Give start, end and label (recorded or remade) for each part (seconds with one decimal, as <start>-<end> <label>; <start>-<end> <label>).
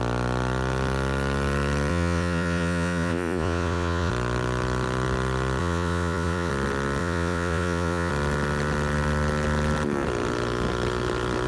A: 0.0-1.9 recorded; 1.9-4.1 remade; 4.1-5.6 recorded; 5.6-6.5 remade; 6.5-7.0 recorded; 7.0-8.1 remade; 8.1-11.5 recorded